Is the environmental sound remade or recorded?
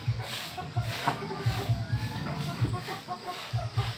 remade